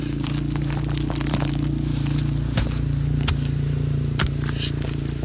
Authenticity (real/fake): fake